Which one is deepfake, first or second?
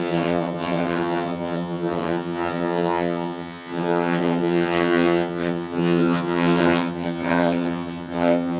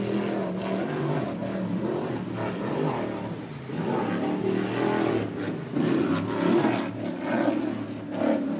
first